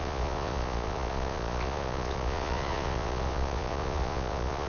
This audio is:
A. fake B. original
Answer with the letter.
A